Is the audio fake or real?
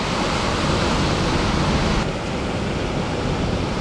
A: real